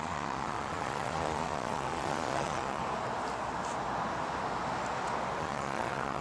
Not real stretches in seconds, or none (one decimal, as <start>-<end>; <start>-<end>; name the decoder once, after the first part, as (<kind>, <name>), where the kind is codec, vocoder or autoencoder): 0.0-2.8 (vocoder, Vocos); 5.4-6.2